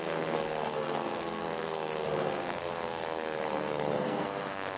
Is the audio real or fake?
fake